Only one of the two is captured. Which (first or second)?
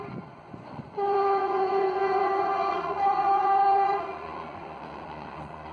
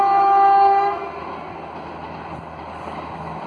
second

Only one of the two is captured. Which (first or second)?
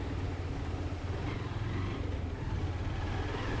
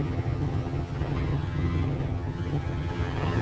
first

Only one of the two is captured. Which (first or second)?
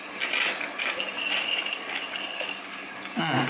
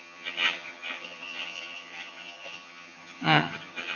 first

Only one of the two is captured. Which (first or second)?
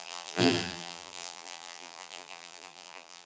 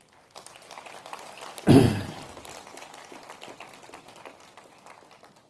second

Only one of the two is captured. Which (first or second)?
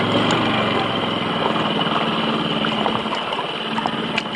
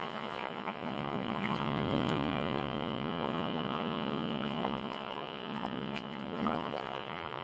first